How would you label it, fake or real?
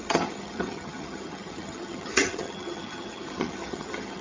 fake